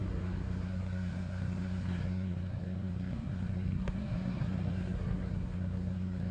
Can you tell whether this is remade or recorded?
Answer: remade